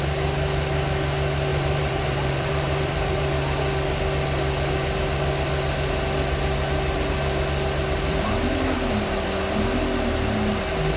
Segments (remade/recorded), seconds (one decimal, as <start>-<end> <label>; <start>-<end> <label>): 0.0-1.5 recorded; 1.5-3.2 remade; 3.2-11.0 recorded